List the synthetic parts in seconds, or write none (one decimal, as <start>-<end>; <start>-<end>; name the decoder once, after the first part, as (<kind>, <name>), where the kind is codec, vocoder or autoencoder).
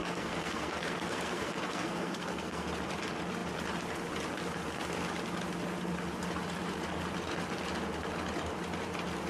0.0-2.7 (codec, SNAC)